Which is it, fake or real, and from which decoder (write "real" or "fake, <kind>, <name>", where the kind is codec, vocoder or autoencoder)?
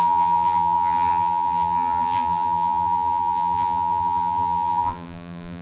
fake, vocoder, BigVGAN v2